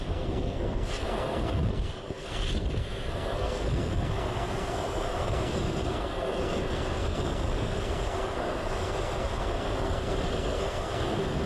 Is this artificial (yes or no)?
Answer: yes